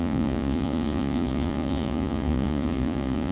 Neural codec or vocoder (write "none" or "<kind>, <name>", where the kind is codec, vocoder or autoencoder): vocoder, Vocos